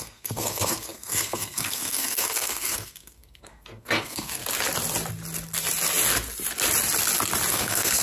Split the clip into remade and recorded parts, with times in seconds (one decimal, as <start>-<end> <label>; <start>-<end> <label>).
0.0-4.4 remade; 4.4-7.5 recorded; 7.5-8.0 remade